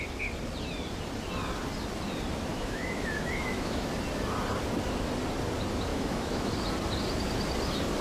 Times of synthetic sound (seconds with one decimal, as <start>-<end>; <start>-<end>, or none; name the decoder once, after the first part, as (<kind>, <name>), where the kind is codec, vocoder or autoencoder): 2.5-3.9 (autoencoder, DAC-VAE); 5.9-6.5